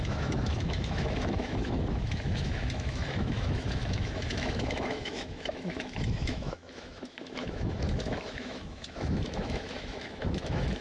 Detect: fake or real fake